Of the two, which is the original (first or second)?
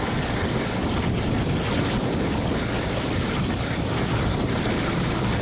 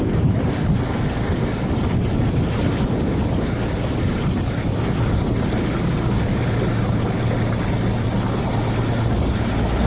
second